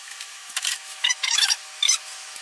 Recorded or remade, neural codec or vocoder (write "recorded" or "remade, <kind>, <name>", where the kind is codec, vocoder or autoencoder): remade, autoencoder, DAC-VAE